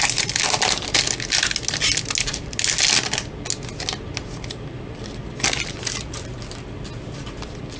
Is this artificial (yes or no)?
no